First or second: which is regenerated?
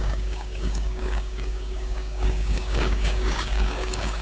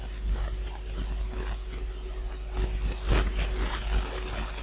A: first